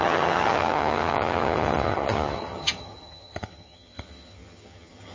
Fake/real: fake